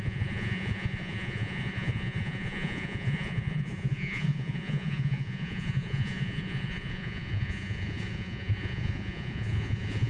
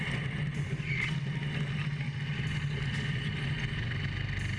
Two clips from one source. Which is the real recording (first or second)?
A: second